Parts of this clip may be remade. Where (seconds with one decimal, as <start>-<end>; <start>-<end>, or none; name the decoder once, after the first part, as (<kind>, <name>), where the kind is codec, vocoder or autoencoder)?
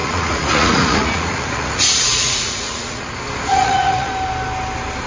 0.0-3.1 (vocoder, Vocos); 3.5-4.1